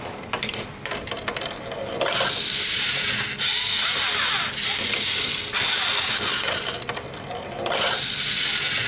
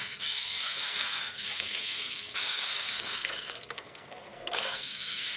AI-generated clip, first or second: second